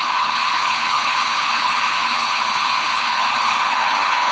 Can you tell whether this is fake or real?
fake